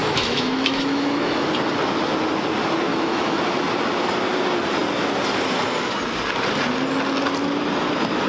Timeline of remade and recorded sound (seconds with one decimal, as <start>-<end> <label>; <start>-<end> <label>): 0.0-1.5 remade; 1.5-2.9 recorded; 2.9-3.4 remade; 3.4-8.3 recorded